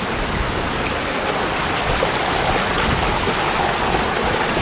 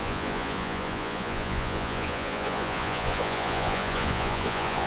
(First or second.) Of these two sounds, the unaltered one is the first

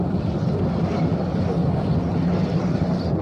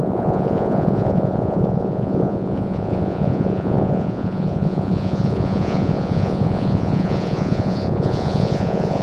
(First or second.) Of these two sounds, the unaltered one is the first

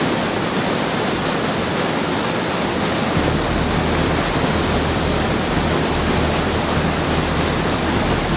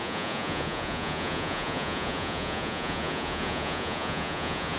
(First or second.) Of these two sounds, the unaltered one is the first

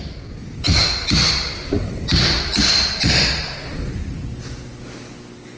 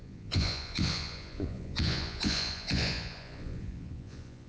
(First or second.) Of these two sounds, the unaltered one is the first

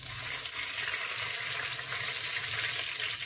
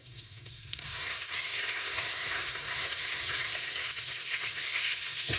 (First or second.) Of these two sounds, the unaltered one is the first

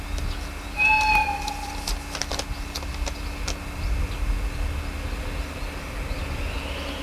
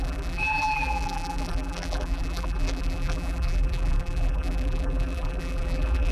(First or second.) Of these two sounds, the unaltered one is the first